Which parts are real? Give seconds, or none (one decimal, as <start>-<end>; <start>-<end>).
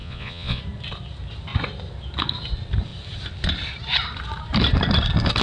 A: 0.6-5.4